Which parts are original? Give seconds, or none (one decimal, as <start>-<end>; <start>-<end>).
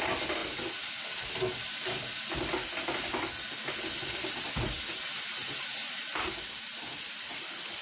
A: 0.0-7.8